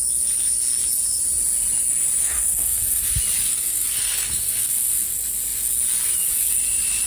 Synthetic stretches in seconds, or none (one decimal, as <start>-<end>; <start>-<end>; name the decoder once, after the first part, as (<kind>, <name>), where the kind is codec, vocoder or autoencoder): 2.2-3.1 (codec, SNAC); 3.5-4.7